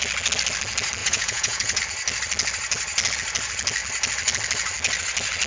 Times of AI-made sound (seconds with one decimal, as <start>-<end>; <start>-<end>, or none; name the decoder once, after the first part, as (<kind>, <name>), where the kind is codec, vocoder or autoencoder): 1.0-1.8 (vocoder, Vocos)